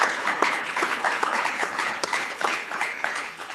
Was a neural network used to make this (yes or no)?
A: yes